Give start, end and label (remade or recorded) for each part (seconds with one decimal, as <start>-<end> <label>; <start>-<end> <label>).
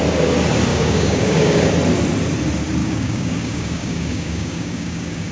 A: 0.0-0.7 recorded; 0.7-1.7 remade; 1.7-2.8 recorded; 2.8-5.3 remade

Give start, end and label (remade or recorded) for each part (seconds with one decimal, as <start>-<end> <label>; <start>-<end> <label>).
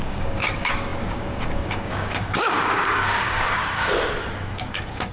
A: 0.0-3.6 remade; 3.6-4.2 recorded; 4.2-5.1 remade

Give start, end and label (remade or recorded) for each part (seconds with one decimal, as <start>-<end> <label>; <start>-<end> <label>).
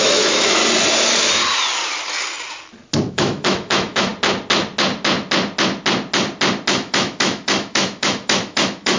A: 0.0-0.6 remade; 0.6-3.1 recorded; 3.1-4.1 remade; 4.1-6.7 recorded; 6.7-9.0 remade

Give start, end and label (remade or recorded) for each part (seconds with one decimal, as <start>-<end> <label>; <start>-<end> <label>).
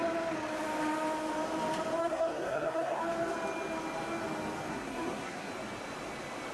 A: 0.0-2.0 recorded; 2.0-3.0 remade; 3.0-4.7 recorded; 4.7-5.5 remade; 5.5-6.5 recorded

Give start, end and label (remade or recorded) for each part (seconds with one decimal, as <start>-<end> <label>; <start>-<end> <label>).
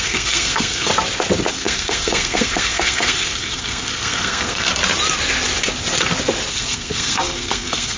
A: 0.0-0.9 remade; 0.9-1.5 recorded; 1.5-4.7 remade; 4.7-6.5 recorded; 6.5-8.0 remade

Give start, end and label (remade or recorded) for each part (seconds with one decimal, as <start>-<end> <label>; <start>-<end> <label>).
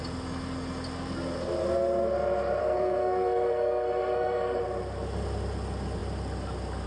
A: 0.0-2.6 recorded; 2.6-4.6 remade; 4.6-6.9 recorded